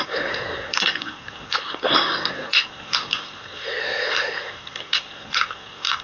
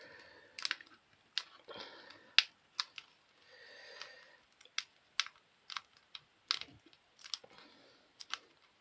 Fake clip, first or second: first